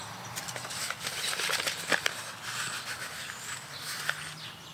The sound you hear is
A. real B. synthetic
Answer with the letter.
A